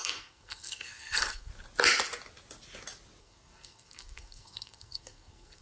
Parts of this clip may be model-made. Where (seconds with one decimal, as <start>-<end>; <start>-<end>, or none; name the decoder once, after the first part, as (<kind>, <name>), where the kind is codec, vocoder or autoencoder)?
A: 0.0-1.5 (codec, SNAC); 3.2-5.6